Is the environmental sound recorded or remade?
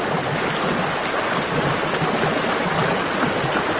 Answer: recorded